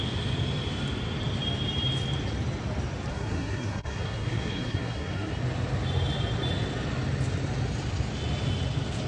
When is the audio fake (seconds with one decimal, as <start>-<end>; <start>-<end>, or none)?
3.1-5.3